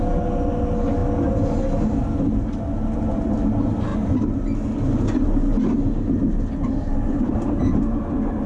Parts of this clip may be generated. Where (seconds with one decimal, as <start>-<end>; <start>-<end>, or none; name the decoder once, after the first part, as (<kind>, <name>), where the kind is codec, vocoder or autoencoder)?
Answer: 6.7-8.0 (vocoder, BigVGAN v2)